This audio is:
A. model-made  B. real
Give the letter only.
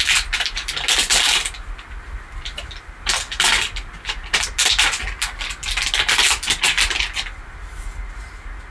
B